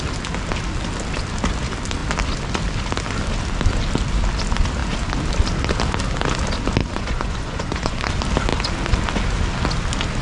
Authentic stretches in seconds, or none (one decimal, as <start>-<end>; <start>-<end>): 0.0-6.8; 8.1-10.2